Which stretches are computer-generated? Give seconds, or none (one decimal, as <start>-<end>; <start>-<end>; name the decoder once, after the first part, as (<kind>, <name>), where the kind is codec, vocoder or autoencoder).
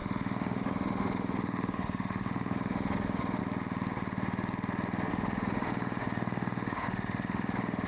0.0-3.4 (autoencoder, DAC-VAE); 5.1-7.9